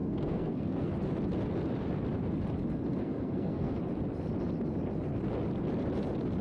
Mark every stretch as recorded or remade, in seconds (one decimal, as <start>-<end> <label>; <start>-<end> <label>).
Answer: 0.0-0.9 remade; 0.9-2.9 recorded; 2.9-3.8 remade; 3.8-6.4 recorded